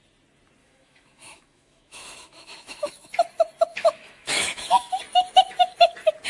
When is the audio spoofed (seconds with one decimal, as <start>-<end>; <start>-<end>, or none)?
0.6-3.1; 3.7-4.9